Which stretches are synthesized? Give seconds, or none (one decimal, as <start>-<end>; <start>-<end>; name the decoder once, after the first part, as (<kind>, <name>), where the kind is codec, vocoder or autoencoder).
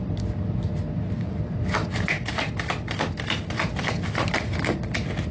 none